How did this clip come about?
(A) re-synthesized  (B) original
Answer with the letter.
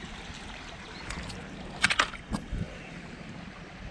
B